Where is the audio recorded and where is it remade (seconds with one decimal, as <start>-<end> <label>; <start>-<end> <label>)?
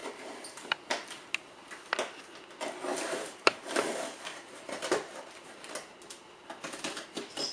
0.0-1.1 remade; 1.1-2.9 recorded; 2.9-5.7 remade; 5.7-7.5 recorded